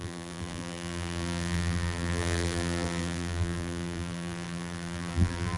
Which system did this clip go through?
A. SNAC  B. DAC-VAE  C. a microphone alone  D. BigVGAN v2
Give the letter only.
D